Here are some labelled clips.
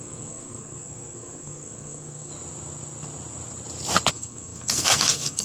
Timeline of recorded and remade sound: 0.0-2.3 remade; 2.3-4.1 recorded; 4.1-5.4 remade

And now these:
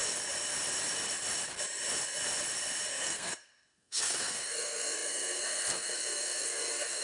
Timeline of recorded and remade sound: 0.0-2.9 recorded; 2.9-7.0 remade

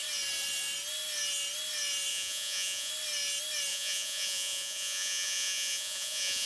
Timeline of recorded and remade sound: 0.0-2.1 recorded; 2.1-2.9 remade; 2.9-3.7 recorded; 3.7-6.5 remade

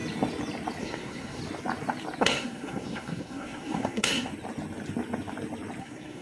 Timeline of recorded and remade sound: 0.0-0.8 recorded; 0.8-1.4 remade; 1.4-2.2 recorded; 2.2-4.3 remade; 4.3-5.8 recorded; 5.8-6.2 remade

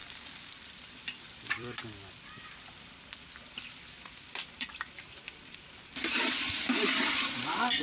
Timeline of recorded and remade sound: 0.0-7.8 remade

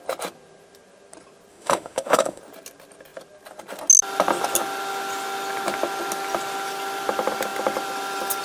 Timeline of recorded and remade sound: 0.0-1.5 recorded; 1.5-2.4 remade; 2.4-8.4 recorded

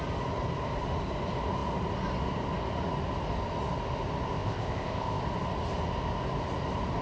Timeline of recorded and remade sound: 0.0-4.3 recorded; 4.3-5.2 remade; 5.2-7.0 recorded